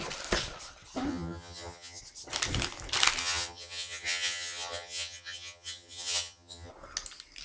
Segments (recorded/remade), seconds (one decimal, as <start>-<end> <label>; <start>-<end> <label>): 0.0-1.1 recorded; 1.1-2.0 remade; 2.0-3.2 recorded; 3.2-6.7 remade; 6.7-7.4 recorded